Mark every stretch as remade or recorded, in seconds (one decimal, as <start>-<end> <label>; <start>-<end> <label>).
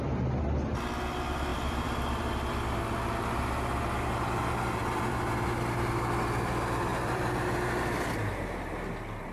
0.0-1.5 recorded; 1.5-2.3 remade; 2.3-4.8 recorded; 4.8-5.3 remade; 5.3-6.9 recorded; 6.9-8.3 remade; 8.3-9.3 recorded